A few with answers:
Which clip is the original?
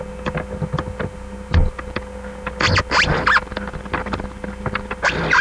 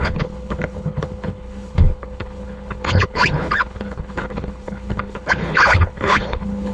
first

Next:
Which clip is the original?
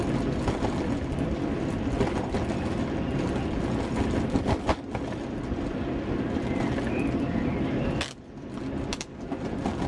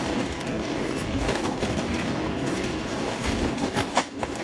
first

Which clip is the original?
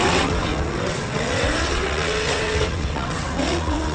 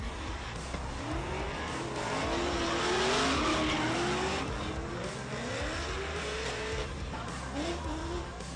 second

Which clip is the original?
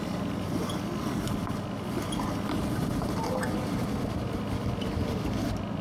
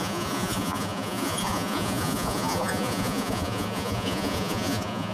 first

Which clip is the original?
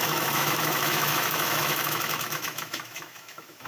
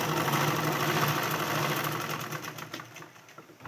second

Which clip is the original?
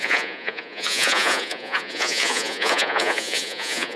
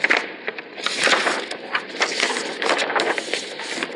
second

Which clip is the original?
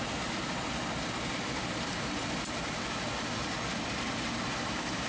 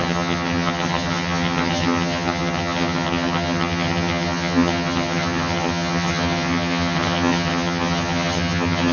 first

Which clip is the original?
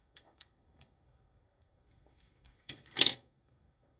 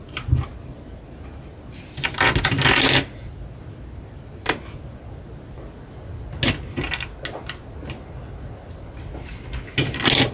second